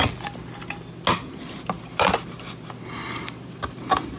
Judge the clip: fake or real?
real